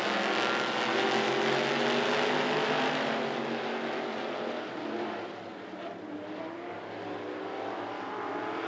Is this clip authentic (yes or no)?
yes